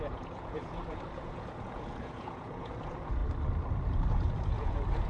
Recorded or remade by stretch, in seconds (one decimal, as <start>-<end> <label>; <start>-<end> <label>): 0.0-3.2 remade; 3.2-4.1 recorded; 4.1-5.1 remade